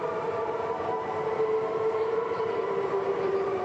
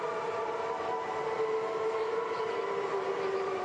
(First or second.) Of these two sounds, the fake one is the first